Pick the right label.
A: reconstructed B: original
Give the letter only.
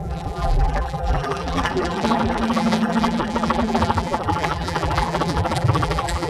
A